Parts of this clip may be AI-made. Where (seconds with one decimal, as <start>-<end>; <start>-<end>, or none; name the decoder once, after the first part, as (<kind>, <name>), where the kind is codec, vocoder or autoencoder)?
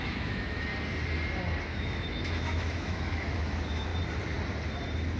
0.0-0.7 (autoencoder, DAC-VAE); 1.6-3.9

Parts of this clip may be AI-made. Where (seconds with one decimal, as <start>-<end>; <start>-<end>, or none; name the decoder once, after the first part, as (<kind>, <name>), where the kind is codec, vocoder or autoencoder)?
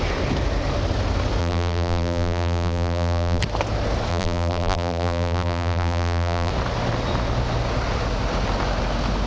1.4-3.4 (vocoder, BigVGAN v2); 4.1-6.5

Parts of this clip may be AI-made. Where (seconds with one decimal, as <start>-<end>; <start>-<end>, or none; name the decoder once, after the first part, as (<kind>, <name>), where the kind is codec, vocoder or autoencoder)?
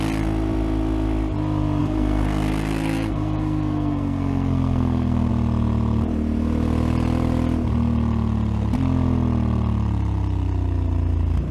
1.8-5.3 (codec, SNAC)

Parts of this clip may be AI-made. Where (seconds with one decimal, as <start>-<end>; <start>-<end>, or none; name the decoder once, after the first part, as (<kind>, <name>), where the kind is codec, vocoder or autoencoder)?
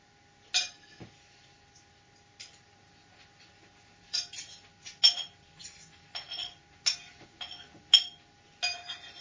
none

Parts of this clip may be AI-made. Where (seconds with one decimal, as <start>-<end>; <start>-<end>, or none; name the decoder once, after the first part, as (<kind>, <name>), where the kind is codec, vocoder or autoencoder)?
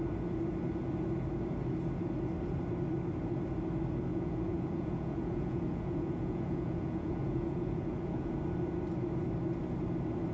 4.1-8.4 (vocoder, Vocos)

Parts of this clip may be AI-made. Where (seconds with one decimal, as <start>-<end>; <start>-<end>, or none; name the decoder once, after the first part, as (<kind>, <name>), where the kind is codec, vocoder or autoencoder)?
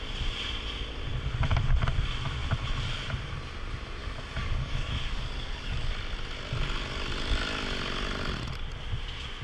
4.0-5.9 (codec, DAC)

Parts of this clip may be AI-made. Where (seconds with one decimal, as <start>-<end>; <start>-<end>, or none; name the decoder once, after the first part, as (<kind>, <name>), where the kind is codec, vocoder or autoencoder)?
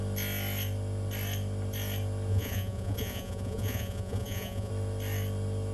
2.3-4.7 (vocoder, Vocos)